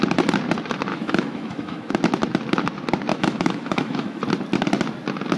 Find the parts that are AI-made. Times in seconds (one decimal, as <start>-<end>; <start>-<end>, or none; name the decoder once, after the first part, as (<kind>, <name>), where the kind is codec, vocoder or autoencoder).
0.9-1.9 (autoencoder, DAC-VAE); 3.1-4.2